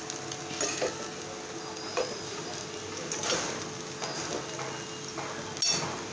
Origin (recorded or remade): recorded